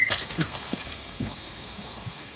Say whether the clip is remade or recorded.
remade